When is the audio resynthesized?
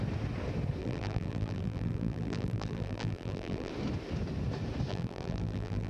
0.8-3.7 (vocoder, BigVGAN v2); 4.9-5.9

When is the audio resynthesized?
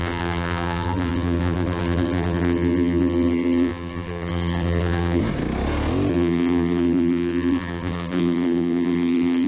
0.0-5.2 (vocoder, BigVGAN v2); 6.1-9.5